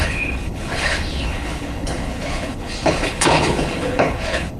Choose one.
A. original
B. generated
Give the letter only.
B